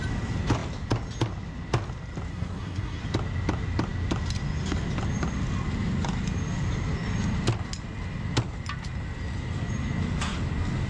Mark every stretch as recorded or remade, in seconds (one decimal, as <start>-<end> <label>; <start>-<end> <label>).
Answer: 0.0-2.3 recorded; 2.3-3.0 remade; 3.0-10.9 recorded